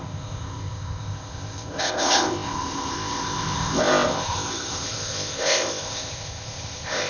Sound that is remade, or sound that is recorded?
remade